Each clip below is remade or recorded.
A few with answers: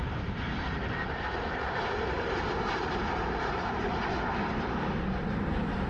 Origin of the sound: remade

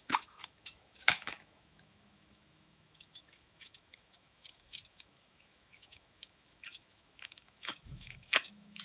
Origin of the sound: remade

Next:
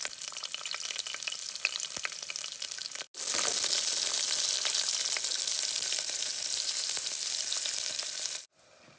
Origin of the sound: recorded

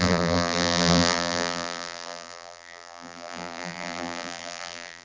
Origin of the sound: remade